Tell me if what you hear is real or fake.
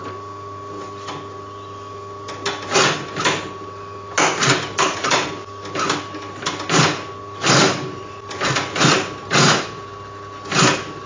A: real